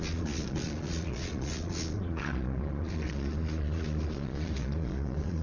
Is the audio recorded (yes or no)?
no